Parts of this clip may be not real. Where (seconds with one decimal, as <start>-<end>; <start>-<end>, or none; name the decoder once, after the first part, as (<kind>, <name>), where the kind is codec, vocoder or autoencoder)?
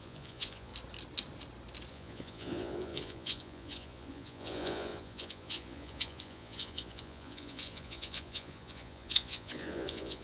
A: 0.0-0.7 (vocoder, Vocos); 1.9-10.2